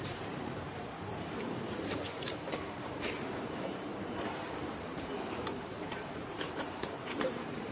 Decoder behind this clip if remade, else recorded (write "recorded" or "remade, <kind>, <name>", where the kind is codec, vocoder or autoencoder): remade, vocoder, BigVGAN v2